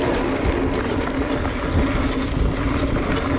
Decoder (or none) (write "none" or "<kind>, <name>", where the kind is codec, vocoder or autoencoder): none